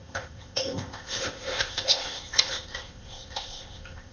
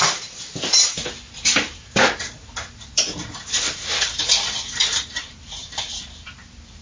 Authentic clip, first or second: second